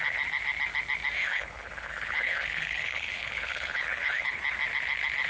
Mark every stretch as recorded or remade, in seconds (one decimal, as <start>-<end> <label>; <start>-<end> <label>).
0.0-1.2 recorded; 1.2-4.4 remade; 4.4-5.3 recorded